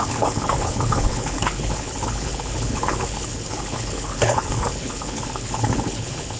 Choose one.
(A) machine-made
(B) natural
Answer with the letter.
A